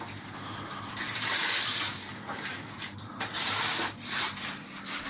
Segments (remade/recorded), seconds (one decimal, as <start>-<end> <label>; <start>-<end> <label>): 0.0-5.1 remade